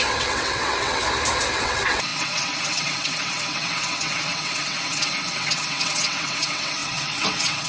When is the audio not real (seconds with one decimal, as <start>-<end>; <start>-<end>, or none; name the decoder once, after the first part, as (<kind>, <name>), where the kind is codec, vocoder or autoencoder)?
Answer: 0.0-1.0 (vocoder, WaveNeXt); 1.6-7.7